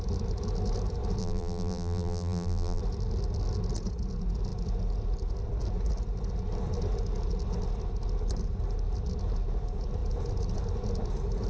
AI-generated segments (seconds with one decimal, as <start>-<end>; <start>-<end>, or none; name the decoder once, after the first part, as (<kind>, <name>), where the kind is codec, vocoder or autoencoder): 1.2-2.8 (vocoder, BigVGAN v2)